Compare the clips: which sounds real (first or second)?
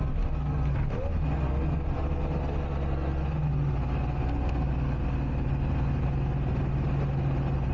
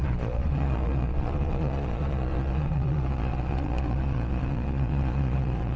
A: first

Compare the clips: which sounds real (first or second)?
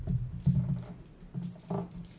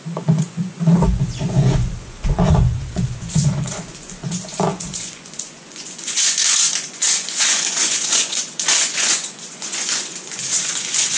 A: first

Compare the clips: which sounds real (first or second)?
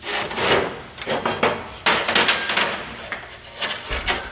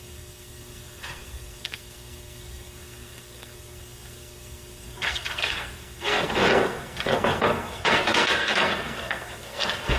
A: first